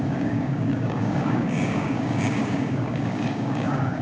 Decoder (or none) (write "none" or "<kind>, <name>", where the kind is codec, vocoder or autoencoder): codec, DAC